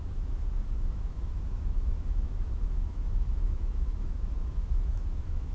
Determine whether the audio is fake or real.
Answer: fake